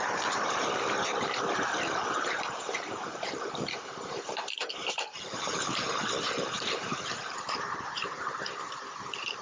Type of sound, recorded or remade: remade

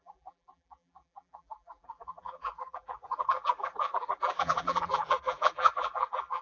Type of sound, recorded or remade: remade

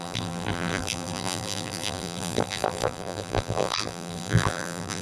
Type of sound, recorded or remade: remade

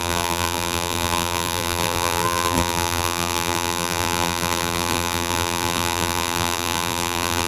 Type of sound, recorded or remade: remade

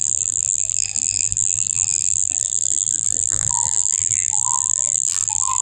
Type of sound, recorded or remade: remade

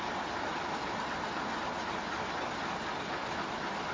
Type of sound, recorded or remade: recorded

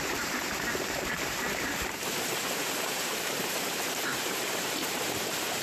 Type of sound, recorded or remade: remade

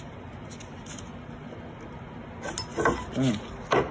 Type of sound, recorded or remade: recorded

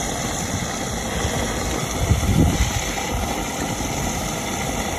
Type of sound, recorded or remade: remade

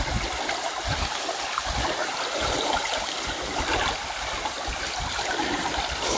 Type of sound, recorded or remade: recorded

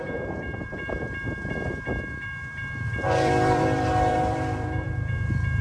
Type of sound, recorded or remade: remade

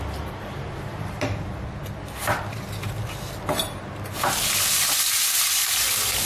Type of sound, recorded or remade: remade